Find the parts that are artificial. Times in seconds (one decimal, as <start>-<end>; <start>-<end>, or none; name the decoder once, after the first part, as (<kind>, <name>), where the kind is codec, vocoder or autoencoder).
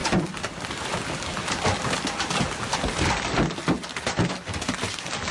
none